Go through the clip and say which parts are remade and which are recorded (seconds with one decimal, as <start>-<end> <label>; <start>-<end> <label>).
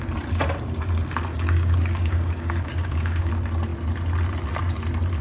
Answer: 0.0-1.3 recorded; 1.3-3.3 remade; 3.3-5.2 recorded